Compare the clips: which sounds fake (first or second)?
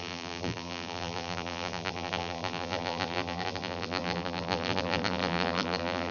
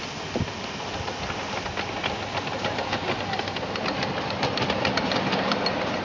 first